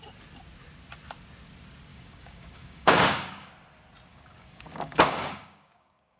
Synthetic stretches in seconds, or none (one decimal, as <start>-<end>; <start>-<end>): 1.9-3.5; 4.1-6.2